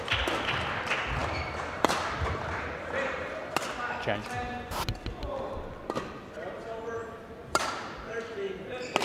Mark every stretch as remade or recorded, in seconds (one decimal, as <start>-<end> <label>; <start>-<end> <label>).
0.0-1.2 recorded; 1.2-3.5 remade; 3.5-7.0 recorded; 7.0-7.7 remade; 7.7-9.0 recorded